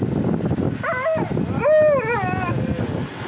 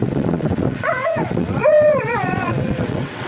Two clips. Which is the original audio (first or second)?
first